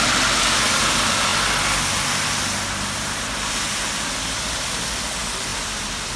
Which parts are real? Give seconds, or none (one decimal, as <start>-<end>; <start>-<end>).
0.0-6.2